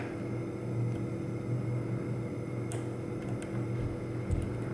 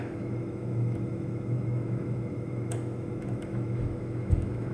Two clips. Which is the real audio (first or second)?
first